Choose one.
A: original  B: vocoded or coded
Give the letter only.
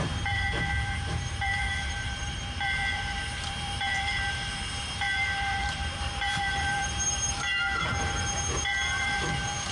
B